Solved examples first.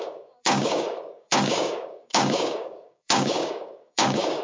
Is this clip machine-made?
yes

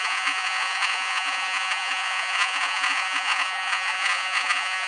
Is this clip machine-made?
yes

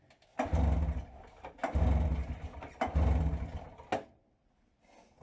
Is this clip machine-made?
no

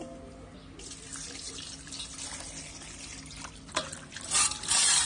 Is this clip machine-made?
no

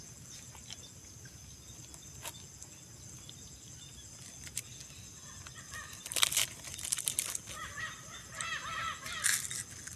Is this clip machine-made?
no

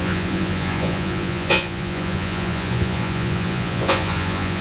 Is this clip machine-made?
yes